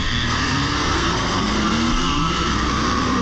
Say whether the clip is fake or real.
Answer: fake